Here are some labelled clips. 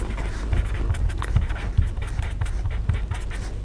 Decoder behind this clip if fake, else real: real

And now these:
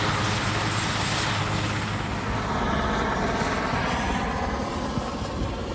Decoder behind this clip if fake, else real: real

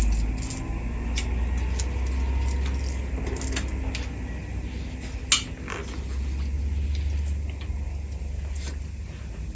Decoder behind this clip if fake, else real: real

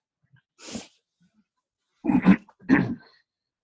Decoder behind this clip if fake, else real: real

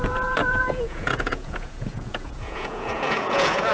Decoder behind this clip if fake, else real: fake, vocoder, Vocos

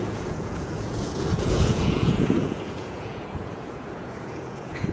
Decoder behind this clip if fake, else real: fake, vocoder, Vocos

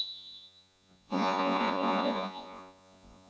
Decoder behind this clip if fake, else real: fake, vocoder, Vocos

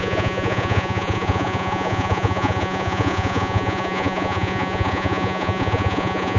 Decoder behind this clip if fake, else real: fake, vocoder, Vocos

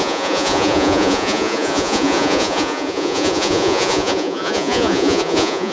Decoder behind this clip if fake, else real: fake, vocoder, Vocos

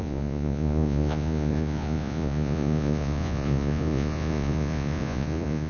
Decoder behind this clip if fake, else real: fake, vocoder, Vocos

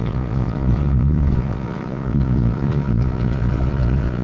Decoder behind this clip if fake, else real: fake, vocoder, Vocos